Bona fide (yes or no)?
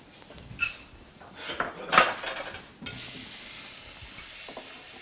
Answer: yes